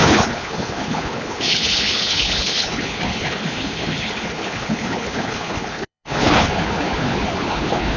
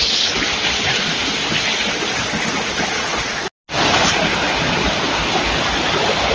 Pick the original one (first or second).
second